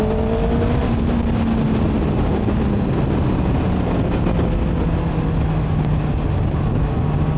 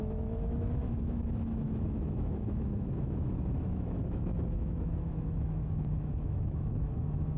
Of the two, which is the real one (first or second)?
first